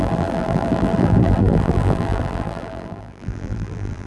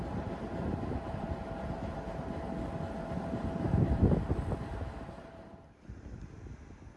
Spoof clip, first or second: first